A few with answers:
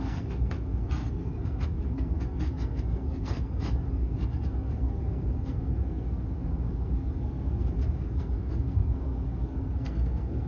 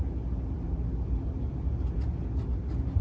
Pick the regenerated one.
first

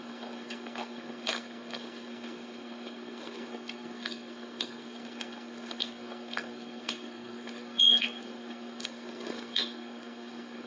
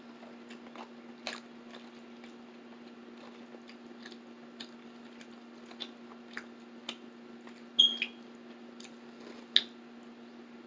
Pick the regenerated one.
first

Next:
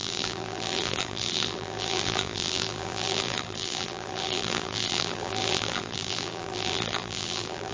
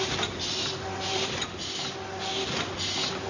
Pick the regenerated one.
first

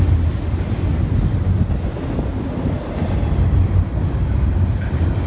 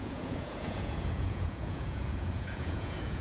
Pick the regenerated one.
second